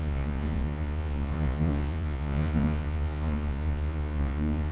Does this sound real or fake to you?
fake